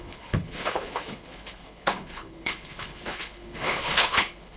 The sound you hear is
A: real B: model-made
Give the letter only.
B